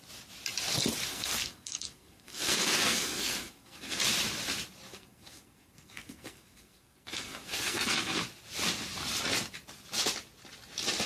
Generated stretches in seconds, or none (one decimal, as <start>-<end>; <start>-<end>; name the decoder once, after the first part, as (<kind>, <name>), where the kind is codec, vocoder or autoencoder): 1.1-4.0 (codec, SNAC); 4.9-8.2